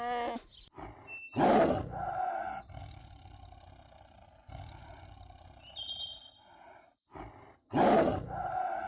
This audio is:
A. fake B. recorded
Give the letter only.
B